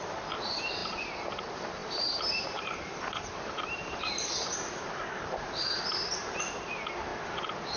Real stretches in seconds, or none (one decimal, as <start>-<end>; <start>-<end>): 0.0-1.8; 6.5-7.8